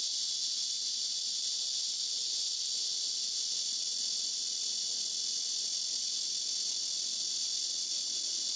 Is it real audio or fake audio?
real